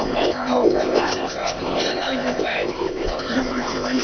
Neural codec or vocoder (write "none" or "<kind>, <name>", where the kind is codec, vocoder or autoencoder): codec, ZipCodec